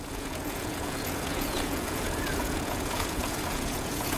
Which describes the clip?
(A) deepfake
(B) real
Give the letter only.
A